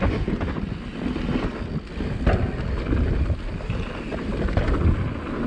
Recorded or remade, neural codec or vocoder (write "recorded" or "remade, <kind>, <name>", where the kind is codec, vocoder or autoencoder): recorded